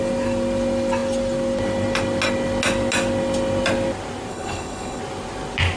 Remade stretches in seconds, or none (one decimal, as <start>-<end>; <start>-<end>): 4.3-5.0